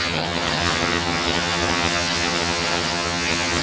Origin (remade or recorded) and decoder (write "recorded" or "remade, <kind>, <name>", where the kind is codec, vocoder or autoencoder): remade, vocoder, HiFi-GAN